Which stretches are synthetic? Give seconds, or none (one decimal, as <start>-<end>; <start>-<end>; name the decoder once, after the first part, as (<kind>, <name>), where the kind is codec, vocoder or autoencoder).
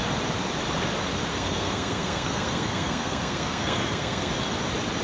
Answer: 1.3-4.3 (codec, SNAC)